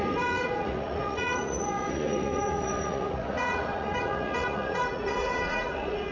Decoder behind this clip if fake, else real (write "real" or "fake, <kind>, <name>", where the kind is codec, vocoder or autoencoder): fake, vocoder, Vocos